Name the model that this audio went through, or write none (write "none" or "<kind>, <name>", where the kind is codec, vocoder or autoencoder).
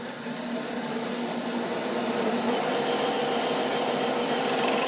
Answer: vocoder, BigVGAN v2